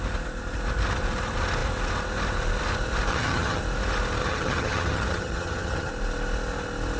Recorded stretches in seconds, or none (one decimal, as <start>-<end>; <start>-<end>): 0.0-3.1; 3.6-4.2; 5.9-7.0